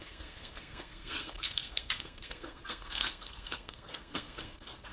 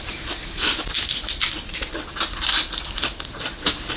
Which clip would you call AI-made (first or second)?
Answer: first